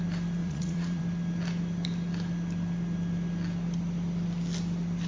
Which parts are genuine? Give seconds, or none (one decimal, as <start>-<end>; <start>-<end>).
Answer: 0.0-0.4; 1.0-5.1